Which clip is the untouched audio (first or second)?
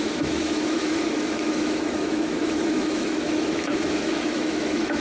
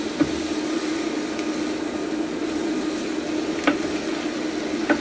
second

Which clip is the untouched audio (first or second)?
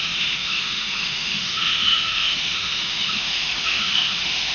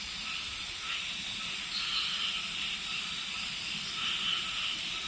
second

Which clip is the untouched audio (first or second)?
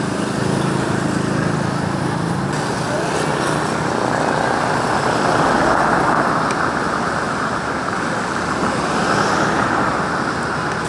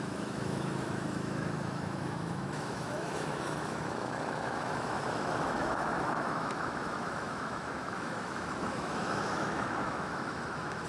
first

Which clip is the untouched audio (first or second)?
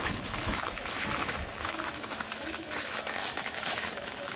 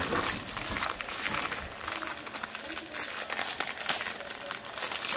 second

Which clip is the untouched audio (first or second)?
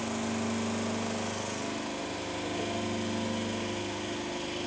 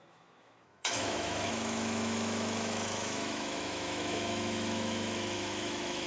first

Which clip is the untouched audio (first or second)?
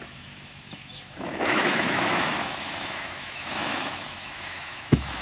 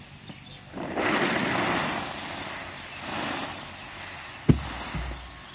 second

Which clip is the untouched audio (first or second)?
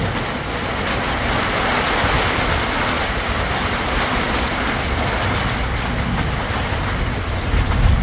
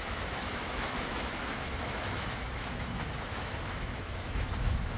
first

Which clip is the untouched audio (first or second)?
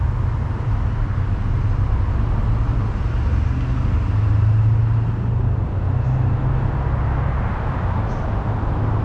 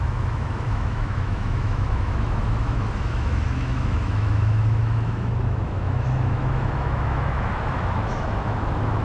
first